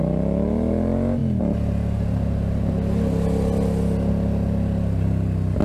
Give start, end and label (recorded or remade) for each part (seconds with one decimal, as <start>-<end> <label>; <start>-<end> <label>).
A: 0.0-5.6 recorded